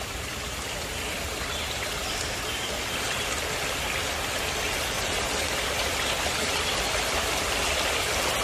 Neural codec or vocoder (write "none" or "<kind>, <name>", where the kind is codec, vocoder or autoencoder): none